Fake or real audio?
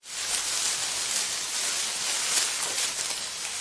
real